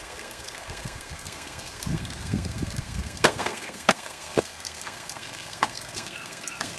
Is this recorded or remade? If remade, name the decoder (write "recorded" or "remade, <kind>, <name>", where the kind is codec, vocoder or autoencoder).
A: remade, codec, SNAC